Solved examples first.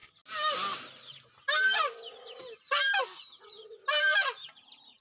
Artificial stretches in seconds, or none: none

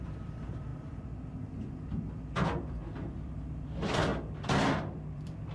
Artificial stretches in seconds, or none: 0.0-0.7 (vocoder, BigVGAN v2); 3.1-4.1; 4.8-5.5